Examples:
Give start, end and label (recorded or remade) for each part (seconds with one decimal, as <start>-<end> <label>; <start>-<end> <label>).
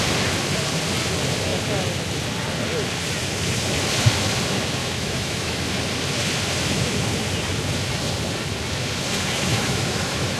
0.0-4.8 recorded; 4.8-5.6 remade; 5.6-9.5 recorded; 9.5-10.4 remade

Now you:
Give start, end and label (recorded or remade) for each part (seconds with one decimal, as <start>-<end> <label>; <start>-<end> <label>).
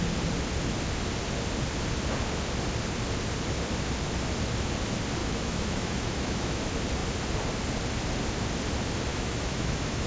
0.0-5.2 recorded; 5.2-6.6 remade; 6.6-9.1 recorded; 9.1-10.1 remade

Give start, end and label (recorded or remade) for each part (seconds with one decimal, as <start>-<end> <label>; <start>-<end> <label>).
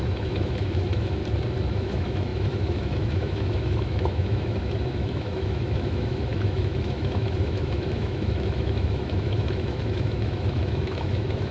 0.0-1.2 remade; 1.2-1.7 recorded; 1.7-11.5 remade